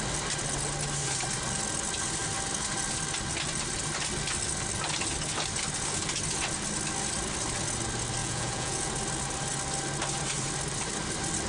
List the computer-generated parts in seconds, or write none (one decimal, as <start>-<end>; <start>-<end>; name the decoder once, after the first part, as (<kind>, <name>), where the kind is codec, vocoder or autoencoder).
8.2-8.9 (vocoder, Vocos)